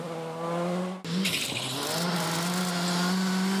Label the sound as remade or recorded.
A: recorded